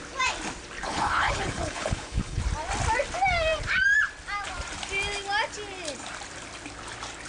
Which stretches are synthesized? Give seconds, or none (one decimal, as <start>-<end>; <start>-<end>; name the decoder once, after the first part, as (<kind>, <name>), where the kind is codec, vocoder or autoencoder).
0.8-2.4 (codec, HILCodec)